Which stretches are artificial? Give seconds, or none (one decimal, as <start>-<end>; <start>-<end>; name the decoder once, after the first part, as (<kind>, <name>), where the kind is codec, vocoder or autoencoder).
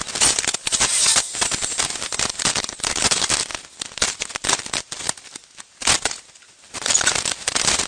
none